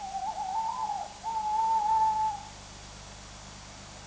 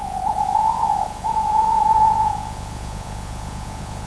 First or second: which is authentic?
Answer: first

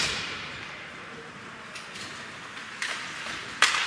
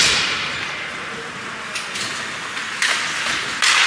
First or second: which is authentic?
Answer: second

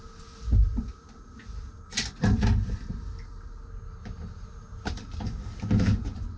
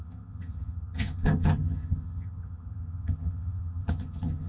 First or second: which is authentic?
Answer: first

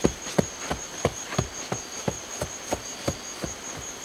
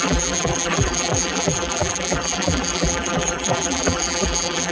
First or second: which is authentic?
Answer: first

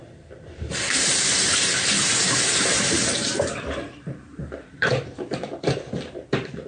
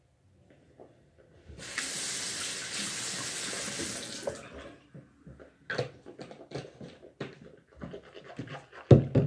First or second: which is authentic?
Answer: second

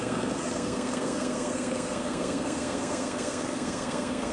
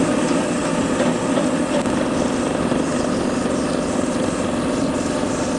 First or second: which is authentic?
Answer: second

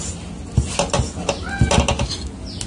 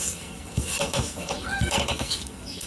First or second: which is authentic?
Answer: first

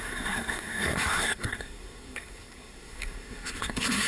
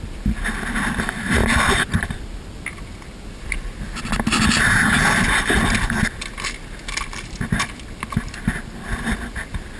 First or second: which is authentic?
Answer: second